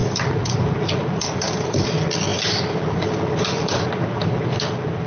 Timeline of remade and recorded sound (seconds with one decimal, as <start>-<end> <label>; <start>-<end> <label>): 0.0-5.1 recorded